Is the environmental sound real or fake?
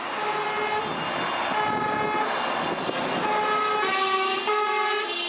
real